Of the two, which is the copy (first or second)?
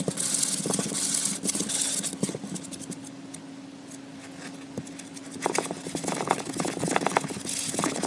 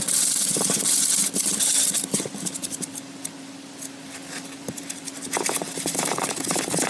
second